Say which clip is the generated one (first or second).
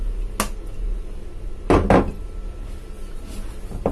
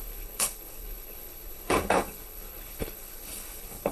second